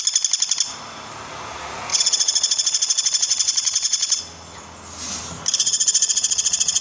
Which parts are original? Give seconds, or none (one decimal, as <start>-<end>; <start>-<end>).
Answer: 0.0-1.9; 4.2-5.6